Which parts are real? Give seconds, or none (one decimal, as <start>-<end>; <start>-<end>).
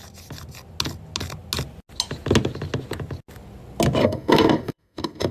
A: 0.0-4.0